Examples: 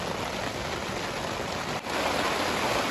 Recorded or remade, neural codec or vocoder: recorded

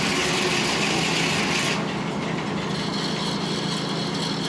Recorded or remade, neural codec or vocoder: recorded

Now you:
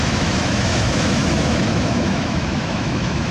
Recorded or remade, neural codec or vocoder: remade, autoencoder, DAC-VAE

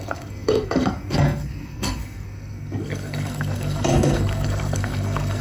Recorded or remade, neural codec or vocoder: remade, codec, SNAC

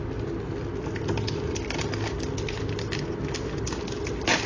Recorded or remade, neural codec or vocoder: recorded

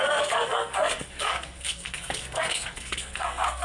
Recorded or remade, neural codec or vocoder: remade, codec, SNAC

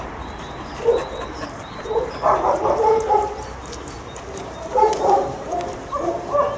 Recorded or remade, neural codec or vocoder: remade, vocoder, BigVGAN v2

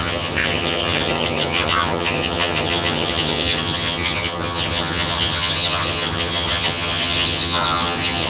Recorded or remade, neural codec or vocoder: remade, vocoder, HiFi-GAN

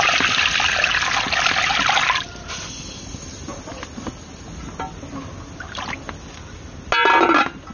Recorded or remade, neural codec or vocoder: recorded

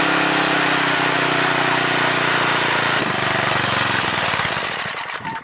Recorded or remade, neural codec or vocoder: recorded